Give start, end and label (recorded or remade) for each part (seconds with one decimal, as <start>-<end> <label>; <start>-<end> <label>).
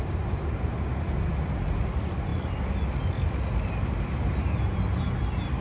0.0-5.6 recorded